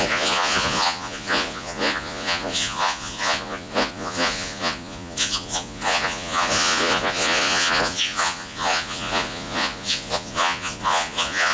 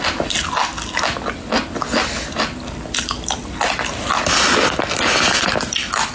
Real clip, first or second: second